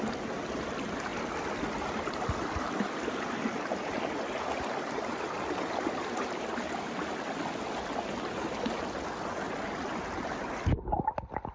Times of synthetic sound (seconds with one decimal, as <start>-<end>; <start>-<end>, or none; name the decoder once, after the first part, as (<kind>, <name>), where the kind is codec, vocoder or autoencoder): none